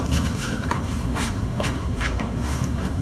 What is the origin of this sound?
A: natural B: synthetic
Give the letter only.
B